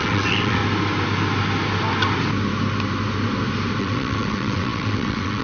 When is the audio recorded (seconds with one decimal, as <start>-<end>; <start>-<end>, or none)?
0.6-3.8